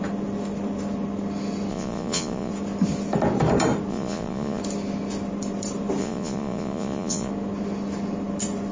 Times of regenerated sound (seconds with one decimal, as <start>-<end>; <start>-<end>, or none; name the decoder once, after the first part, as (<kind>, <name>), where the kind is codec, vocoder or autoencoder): 1.7-2.5 (vocoder, Vocos); 3.9-4.6; 6.0-7.3